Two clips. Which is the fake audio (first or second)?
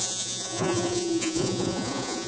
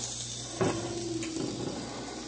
first